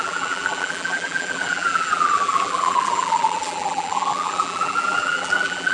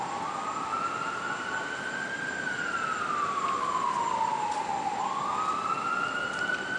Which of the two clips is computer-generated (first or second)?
first